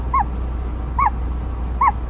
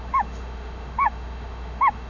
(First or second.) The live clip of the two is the first